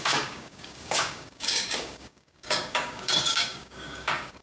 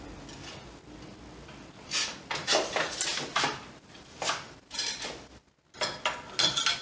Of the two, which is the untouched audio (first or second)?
second